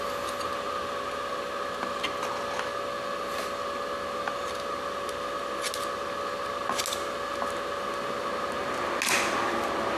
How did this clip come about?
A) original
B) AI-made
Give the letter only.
A